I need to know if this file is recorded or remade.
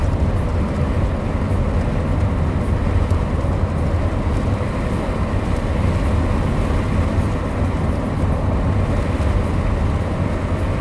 recorded